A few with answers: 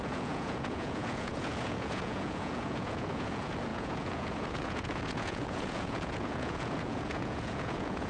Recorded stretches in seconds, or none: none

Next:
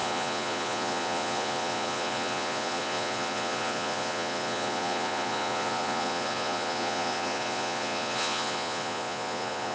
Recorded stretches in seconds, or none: none

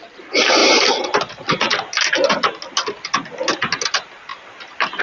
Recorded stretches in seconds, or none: 0.0-5.0

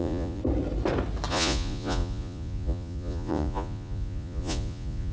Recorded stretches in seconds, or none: 0.4-1.3

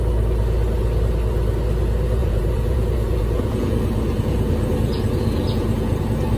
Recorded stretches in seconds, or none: 0.0-2.2; 6.0-6.4

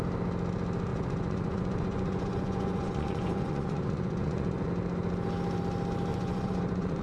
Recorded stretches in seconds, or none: 0.0-0.9; 4.7-6.1

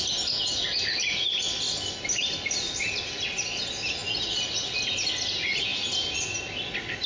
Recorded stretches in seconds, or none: 0.0-7.1